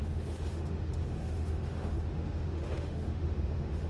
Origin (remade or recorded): remade